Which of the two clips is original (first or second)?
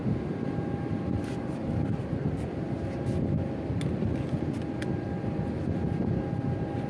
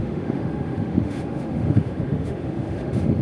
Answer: first